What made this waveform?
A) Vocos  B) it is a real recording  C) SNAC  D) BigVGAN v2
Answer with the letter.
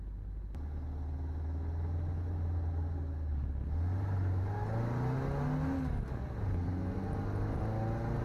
B